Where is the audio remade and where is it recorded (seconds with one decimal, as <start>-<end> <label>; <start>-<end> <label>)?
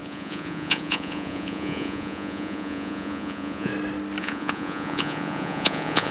0.0-3.7 remade; 3.7-4.2 recorded; 4.2-6.1 remade